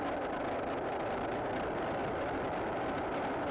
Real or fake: real